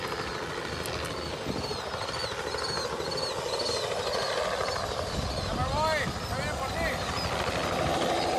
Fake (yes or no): no